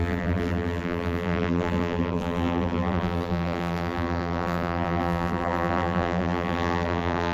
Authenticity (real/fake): fake